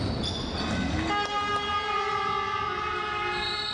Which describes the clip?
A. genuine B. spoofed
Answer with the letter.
A